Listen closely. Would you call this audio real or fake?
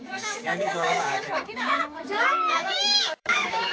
fake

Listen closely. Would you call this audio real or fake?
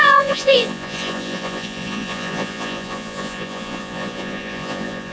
fake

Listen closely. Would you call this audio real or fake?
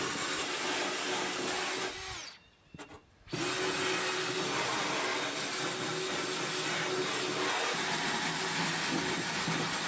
real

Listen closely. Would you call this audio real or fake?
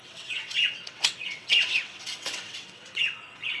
fake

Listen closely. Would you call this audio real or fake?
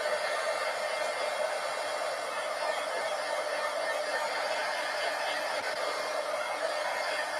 real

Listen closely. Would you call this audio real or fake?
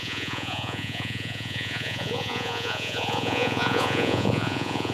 fake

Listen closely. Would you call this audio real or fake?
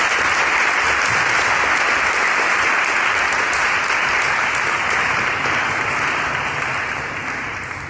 fake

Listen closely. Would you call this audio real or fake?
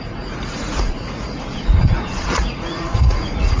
fake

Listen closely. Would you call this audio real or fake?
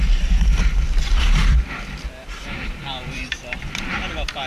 fake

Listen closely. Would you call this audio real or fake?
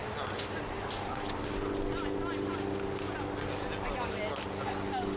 real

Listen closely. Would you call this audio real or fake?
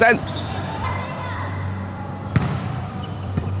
fake